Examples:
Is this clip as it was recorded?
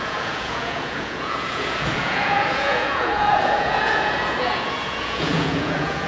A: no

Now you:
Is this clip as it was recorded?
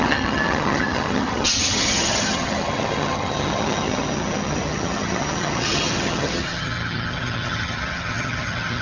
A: no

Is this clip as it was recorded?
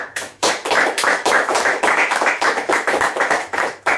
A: no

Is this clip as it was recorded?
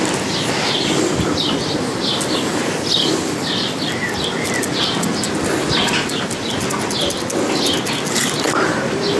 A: yes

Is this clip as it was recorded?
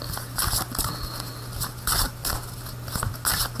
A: yes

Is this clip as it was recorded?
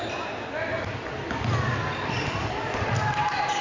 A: yes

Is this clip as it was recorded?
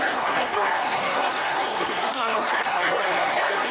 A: no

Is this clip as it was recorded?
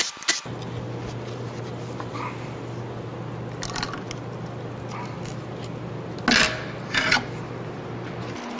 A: yes